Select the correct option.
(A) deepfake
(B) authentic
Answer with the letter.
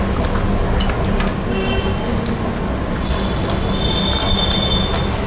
B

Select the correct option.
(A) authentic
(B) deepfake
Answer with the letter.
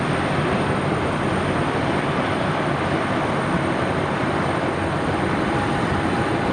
B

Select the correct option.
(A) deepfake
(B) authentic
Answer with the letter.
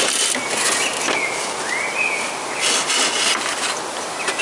B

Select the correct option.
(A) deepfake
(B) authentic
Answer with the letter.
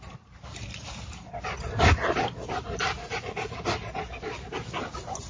B